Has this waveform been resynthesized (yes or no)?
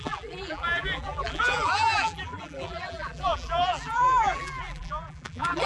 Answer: yes